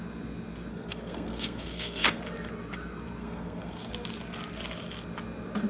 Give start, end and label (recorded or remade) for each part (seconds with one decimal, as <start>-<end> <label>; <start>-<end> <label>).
0.0-0.7 recorded; 0.7-2.2 remade; 2.2-3.2 recorded; 3.2-3.9 remade; 3.9-5.7 recorded